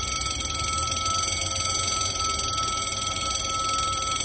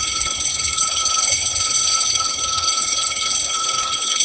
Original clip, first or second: first